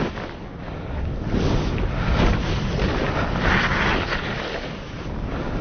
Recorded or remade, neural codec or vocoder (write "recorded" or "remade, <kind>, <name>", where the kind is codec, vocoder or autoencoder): recorded